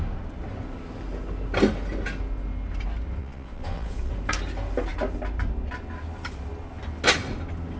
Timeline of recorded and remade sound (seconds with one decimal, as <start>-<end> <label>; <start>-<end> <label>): 0.0-3.2 recorded; 3.2-4.1 remade; 4.1-7.8 recorded

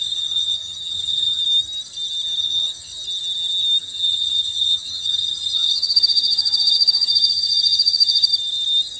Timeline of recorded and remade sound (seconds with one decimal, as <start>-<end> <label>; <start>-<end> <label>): 0.0-1.4 remade; 1.4-2.4 recorded; 2.4-2.9 remade; 2.9-3.8 recorded; 3.8-8.3 remade; 8.3-9.0 recorded

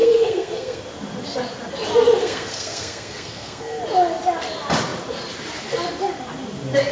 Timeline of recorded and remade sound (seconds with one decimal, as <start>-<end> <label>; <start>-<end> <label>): 0.0-0.8 remade; 0.8-2.2 recorded; 2.2-3.8 remade; 3.8-6.9 recorded

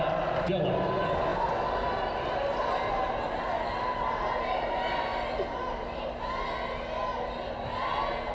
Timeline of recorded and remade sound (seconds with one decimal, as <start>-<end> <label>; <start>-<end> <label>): 0.0-8.3 recorded

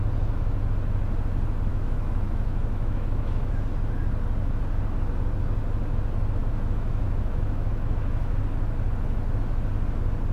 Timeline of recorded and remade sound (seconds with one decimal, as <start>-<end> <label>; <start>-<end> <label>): 0.0-1.7 recorded; 1.7-3.5 remade; 3.5-6.4 recorded; 6.4-8.3 remade; 8.3-10.3 recorded

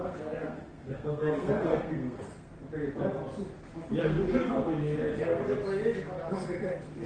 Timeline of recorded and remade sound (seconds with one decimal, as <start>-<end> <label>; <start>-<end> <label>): 0.0-2.5 remade; 2.5-4.0 recorded; 4.0-5.4 remade; 5.4-6.3 recorded; 6.3-7.1 remade